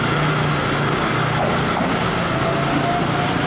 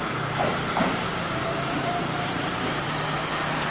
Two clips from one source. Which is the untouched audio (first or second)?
first